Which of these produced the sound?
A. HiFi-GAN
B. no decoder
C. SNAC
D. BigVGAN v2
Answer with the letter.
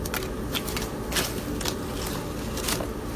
B